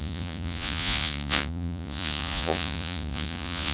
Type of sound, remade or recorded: remade